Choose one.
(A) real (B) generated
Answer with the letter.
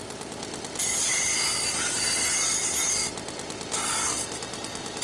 A